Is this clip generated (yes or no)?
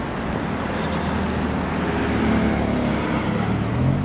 no